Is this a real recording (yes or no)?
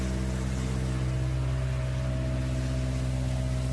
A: yes